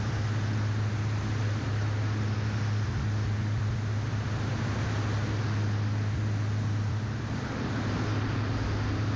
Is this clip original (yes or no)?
yes